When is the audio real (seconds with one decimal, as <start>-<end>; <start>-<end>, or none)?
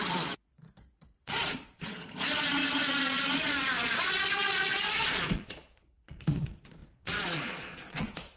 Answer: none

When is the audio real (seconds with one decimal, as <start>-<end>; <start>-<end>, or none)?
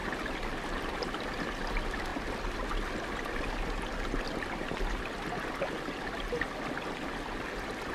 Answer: 0.0-7.9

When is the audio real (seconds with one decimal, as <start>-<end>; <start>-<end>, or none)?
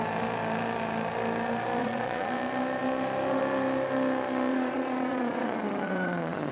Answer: 0.0-1.8; 2.3-4.5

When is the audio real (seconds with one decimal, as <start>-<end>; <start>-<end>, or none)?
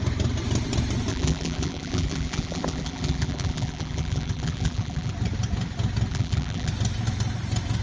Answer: 0.0-1.1; 5.1-6.1; 6.7-7.8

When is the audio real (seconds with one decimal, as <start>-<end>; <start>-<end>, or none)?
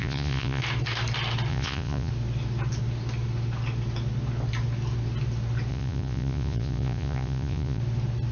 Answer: 0.6-1.5; 2.1-5.7; 7.8-8.3